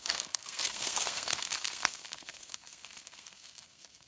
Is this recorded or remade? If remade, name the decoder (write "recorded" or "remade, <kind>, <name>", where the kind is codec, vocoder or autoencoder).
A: remade, codec, SNAC